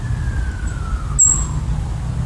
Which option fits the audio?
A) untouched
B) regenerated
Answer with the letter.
A